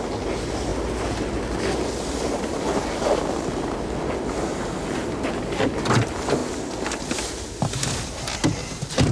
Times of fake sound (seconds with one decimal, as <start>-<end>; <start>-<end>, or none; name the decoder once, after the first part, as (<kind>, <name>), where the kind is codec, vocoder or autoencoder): none